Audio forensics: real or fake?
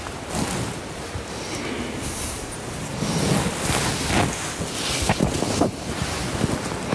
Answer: real